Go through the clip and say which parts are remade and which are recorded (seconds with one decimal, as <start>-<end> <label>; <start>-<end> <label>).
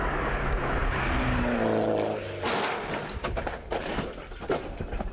0.0-5.1 recorded